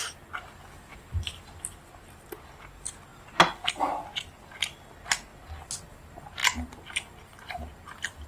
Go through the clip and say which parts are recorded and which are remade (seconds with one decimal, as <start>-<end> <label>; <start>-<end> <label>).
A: 0.0-0.9 recorded; 0.9-1.8 remade; 1.8-8.3 recorded